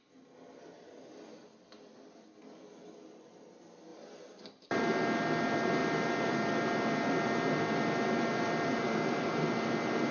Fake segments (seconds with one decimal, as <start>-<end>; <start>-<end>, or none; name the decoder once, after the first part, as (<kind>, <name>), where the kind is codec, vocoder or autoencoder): 3.9-4.8 (vocoder, BigVGAN v2); 5.8-9.5